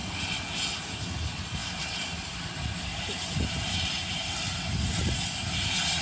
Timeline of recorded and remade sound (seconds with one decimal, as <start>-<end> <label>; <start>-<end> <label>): 0.0-1.6 recorded; 1.6-4.1 remade; 4.1-6.0 recorded